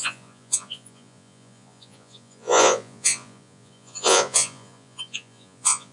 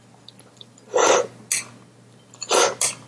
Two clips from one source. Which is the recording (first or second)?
second